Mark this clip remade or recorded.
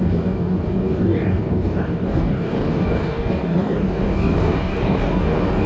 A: remade